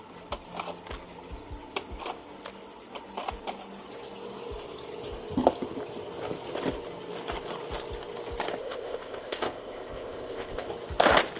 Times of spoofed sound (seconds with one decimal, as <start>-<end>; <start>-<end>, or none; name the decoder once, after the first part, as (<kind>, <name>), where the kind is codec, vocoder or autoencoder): 8.6-10.7 (codec, ZipCodec)